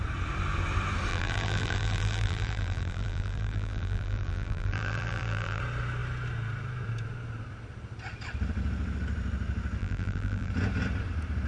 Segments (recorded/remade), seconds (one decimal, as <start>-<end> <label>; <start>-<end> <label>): 0.0-1.1 recorded; 1.1-5.6 remade; 5.6-9.8 recorded; 9.8-10.5 remade; 10.5-11.5 recorded